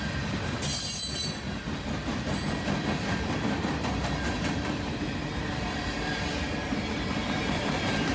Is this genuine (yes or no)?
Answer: yes